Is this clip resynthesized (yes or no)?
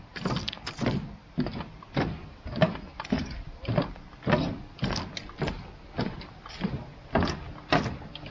no